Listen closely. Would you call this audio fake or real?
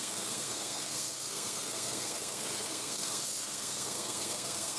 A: fake